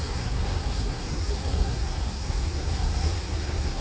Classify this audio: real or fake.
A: fake